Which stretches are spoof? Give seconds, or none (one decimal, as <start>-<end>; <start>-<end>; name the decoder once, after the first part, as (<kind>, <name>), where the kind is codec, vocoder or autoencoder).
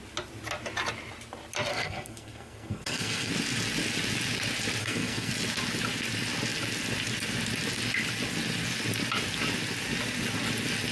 1.7-3.3 (codec, SNAC); 4.8-5.3